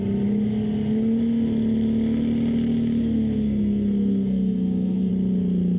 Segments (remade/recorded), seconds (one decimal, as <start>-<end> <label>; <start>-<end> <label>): 0.0-3.0 recorded; 3.0-5.1 remade; 5.1-5.8 recorded